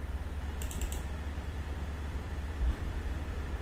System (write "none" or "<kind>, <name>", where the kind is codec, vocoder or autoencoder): vocoder, BigVGAN v2